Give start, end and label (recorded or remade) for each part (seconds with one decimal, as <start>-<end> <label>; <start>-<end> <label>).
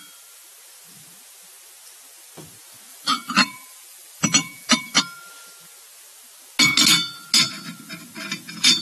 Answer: 0.0-2.9 recorded; 2.9-5.0 remade; 5.0-8.8 recorded